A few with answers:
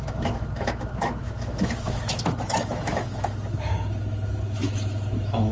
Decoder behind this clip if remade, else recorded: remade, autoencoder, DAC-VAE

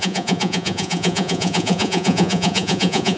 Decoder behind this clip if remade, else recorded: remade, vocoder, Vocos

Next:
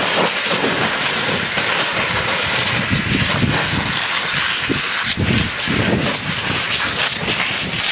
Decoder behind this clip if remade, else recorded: recorded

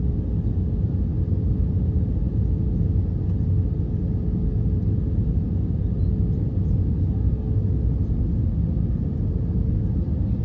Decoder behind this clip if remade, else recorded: recorded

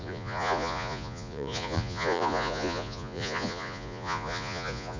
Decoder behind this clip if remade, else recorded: remade, vocoder, Vocos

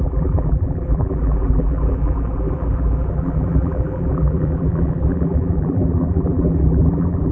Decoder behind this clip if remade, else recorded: remade, vocoder, BigVGAN v2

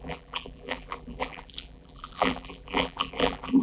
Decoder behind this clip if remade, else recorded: remade, vocoder, BigVGAN v2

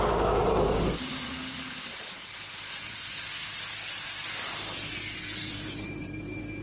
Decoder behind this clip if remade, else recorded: recorded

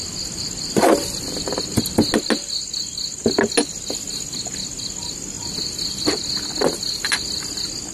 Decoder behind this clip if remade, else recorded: recorded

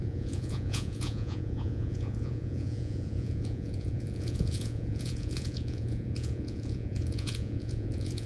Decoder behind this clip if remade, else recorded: remade, vocoder, Vocos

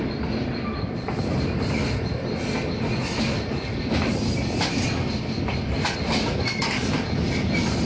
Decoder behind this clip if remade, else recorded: recorded